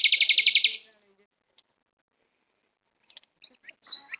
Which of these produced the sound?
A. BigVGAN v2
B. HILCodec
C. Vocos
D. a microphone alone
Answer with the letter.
D